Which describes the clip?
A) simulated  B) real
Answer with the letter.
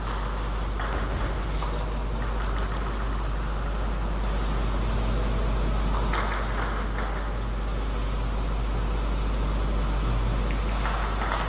B